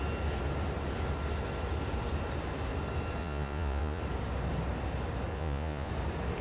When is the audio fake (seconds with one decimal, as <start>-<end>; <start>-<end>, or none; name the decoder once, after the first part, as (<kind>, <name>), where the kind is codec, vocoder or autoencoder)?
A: 3.2-4.0 (vocoder, Vocos); 5.3-5.9